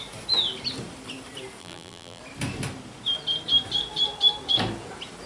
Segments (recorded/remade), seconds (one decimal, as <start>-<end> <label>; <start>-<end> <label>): 0.0-1.6 recorded; 1.6-2.2 remade; 2.2-5.3 recorded